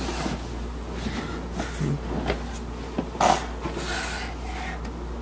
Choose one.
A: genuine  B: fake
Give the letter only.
A